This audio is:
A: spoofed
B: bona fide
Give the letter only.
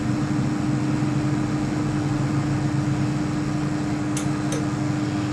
B